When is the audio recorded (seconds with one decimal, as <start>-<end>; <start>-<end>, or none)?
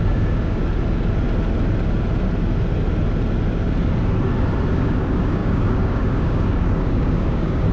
0.6-4.7